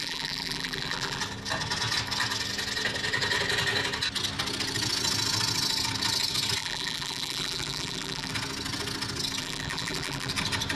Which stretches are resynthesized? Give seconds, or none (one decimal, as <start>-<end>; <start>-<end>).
0.0-1.2; 6.6-8.3; 9.4-10.3